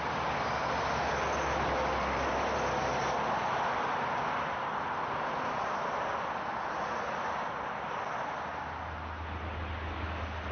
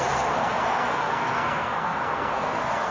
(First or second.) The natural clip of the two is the first